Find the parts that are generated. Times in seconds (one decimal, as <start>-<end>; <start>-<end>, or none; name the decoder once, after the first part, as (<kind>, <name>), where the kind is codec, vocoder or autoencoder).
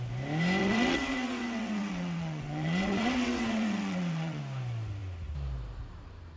0.6-4.4 (vocoder, WaveNeXt)